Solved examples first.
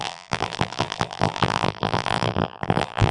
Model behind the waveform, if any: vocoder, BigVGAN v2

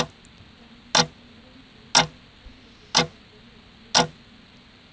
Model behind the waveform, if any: none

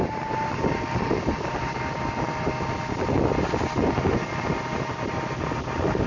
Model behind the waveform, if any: none